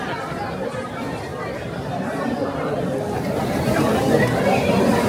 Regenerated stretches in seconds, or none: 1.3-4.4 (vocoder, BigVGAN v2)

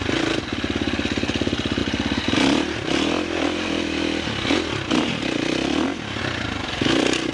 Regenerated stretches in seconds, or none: none

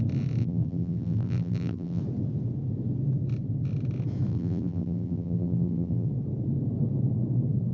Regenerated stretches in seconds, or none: 0.4-2.0 (vocoder, BigVGAN v2); 4.3-6.1

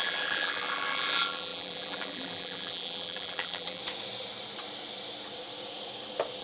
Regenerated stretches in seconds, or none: 0.0-3.8 (vocoder, BigVGAN v2)

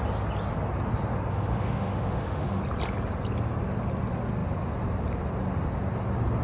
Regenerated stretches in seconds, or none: 1.3-2.6 (autoencoder, DAC-VAE)